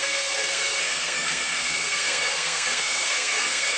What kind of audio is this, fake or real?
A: fake